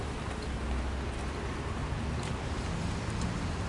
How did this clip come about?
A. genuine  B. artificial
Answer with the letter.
A